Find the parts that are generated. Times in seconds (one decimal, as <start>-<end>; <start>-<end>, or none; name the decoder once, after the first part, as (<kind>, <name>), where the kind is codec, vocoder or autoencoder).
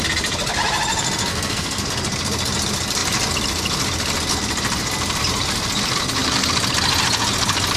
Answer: 1.3-1.9 (codec, SNAC)